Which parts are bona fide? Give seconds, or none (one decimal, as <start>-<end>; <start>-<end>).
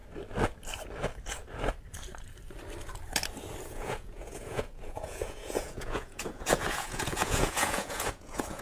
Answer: 0.0-3.6